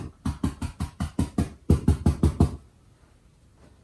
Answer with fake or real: real